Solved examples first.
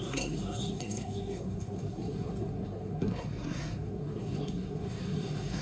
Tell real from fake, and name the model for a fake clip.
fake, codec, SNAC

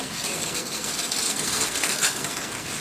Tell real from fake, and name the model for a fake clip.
fake, codec, SNAC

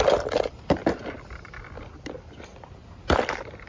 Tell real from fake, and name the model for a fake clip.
real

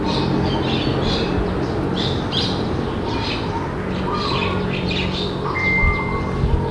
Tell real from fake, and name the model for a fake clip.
real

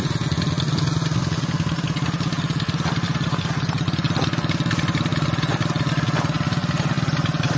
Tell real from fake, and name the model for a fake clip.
real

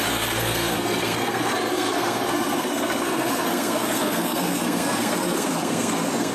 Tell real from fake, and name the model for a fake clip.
fake, codec, SNAC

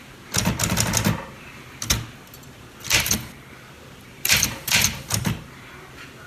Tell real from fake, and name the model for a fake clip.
real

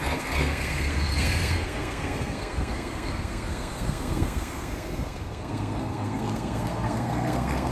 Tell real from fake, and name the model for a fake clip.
fake, codec, SNAC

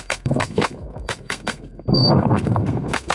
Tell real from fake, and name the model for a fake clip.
fake, codec, SNAC